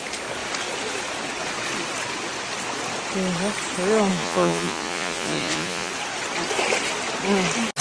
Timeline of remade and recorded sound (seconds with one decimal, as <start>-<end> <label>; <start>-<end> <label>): 0.0-4.1 recorded; 4.1-5.9 remade; 5.9-7.8 recorded